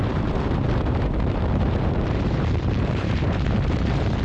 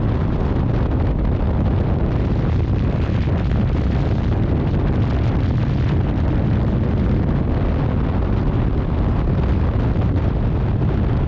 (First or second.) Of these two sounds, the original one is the second